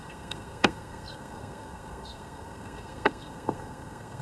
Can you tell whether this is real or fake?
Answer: fake